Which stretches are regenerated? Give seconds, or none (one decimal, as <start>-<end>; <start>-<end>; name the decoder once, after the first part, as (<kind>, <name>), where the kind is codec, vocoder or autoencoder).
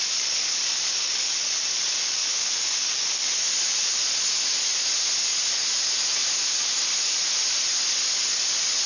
0.7-1.3 (vocoder, BigVGAN v2)